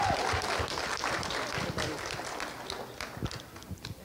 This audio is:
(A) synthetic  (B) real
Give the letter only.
B